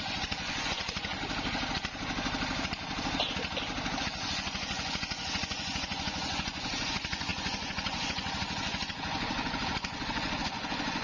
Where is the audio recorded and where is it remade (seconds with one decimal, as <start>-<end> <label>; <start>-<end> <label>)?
0.0-1.1 remade; 1.1-4.0 recorded; 4.0-11.0 remade